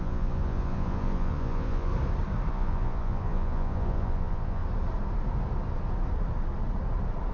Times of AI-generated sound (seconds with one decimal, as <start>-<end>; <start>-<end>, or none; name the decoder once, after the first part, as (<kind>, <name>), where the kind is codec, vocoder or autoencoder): 0.0-1.9 (vocoder, Vocos); 2.5-4.6